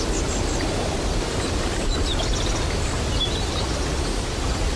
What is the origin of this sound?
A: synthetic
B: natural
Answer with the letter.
B